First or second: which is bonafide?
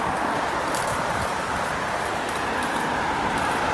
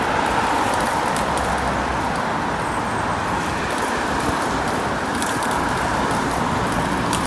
second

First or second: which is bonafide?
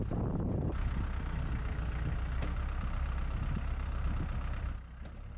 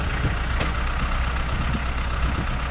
first